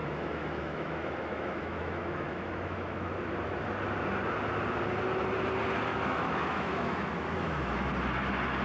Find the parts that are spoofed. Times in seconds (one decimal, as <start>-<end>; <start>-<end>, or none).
0.0-3.1; 5.9-7.9